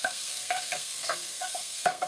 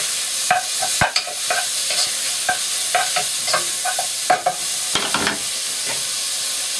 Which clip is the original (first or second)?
second